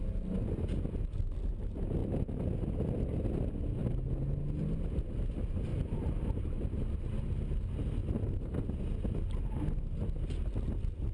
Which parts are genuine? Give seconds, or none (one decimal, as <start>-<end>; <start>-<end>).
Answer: 0.0-5.7; 7.6-8.0; 8.6-11.1